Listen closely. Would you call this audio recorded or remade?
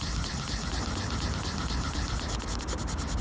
recorded